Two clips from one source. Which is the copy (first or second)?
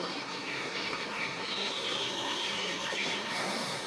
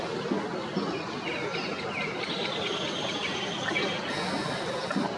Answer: first